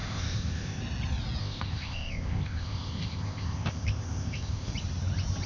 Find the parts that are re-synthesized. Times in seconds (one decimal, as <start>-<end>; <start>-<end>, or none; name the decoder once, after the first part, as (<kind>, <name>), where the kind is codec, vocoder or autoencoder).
0.0-0.8 (codec, ZipCodec); 1.4-4.7